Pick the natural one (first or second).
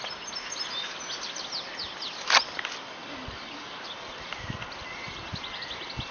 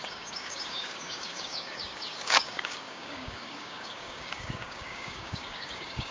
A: first